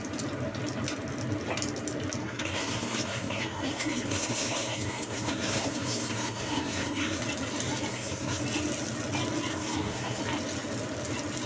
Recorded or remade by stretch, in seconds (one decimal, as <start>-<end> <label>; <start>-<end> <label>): 0.0-2.2 recorded; 2.2-7.2 remade; 7.2-7.9 recorded; 7.9-8.4 remade; 8.4-9.5 recorded; 9.5-10.2 remade; 10.2-11.5 recorded